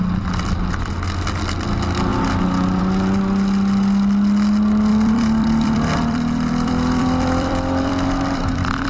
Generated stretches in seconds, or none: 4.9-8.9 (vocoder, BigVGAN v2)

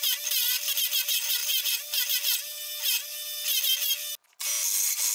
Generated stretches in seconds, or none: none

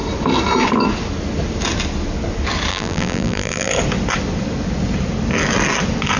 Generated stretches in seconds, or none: 2.7-3.7 (vocoder, BigVGAN v2)